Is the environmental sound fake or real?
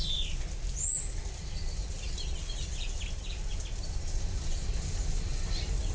real